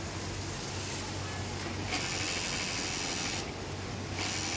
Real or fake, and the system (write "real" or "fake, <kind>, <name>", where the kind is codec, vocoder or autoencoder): real